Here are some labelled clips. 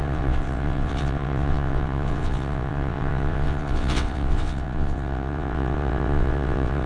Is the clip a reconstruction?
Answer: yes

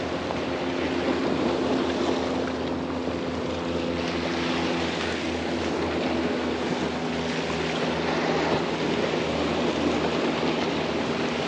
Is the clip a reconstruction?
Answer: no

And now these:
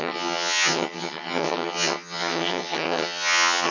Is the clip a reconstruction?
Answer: yes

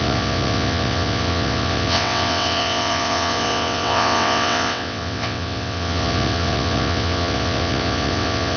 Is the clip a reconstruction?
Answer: yes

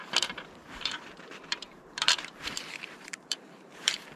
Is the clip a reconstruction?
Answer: yes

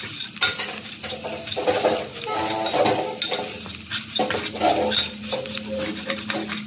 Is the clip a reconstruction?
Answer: no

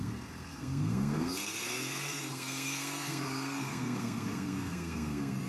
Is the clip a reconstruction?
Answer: yes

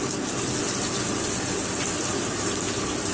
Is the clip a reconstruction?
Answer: no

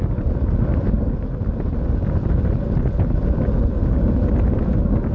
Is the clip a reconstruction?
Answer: no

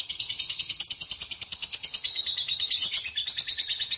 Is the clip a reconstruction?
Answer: yes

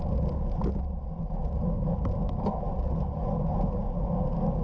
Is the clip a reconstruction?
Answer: no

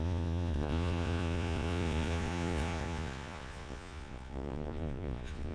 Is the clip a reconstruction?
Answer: yes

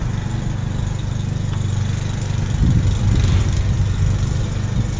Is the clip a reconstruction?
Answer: no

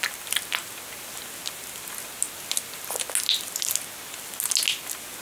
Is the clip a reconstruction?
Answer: no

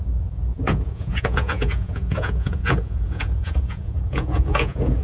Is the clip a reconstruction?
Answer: yes